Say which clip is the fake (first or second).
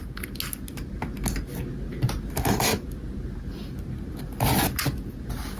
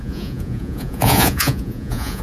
second